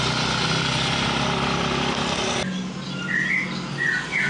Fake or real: real